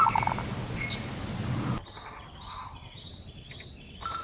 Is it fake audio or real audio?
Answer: real